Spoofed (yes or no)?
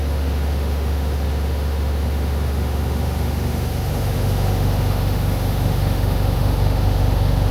yes